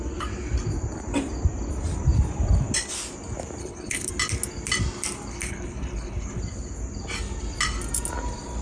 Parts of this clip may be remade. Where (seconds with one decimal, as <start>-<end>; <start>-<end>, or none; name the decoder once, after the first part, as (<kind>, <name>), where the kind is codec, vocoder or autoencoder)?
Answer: 3.6-4.1 (codec, HILCodec); 5.3-6.4